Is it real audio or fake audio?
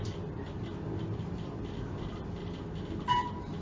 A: real